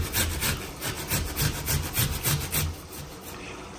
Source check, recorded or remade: recorded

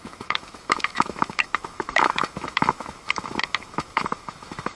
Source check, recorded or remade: remade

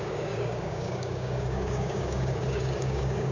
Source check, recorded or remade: remade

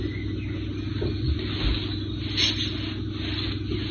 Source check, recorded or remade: recorded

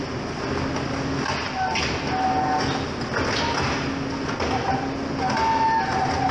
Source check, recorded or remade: recorded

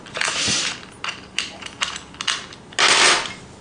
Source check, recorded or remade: recorded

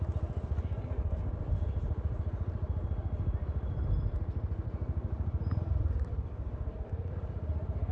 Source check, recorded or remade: remade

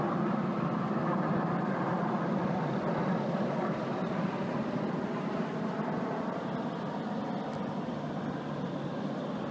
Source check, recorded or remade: recorded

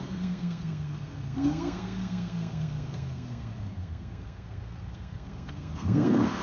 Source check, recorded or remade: remade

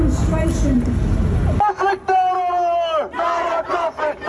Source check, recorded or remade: recorded